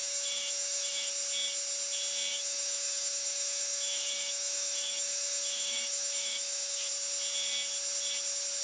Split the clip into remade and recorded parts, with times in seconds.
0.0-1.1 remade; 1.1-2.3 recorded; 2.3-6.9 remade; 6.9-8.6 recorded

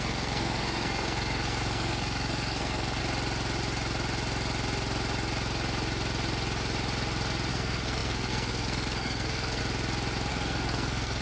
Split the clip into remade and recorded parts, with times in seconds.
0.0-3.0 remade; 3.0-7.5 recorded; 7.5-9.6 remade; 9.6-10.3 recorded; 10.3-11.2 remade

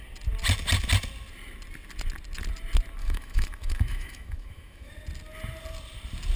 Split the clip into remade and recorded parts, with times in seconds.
0.0-3.0 recorded; 3.0-4.9 remade; 4.9-6.4 recorded